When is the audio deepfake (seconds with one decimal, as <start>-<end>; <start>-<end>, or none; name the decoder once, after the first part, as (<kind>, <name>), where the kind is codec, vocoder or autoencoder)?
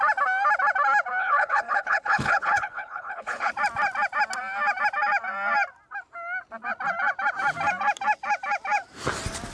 1.2-3.5 (codec, HILCodec)